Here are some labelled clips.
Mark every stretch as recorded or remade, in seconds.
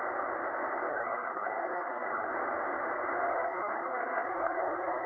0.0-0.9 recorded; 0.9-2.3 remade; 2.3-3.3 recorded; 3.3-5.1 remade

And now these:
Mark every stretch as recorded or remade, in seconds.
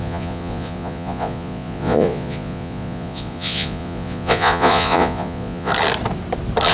0.0-5.7 remade; 5.7-6.7 recorded